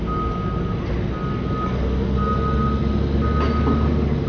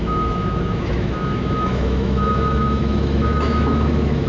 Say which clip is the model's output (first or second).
second